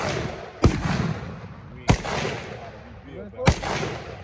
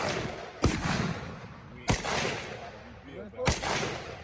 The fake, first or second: second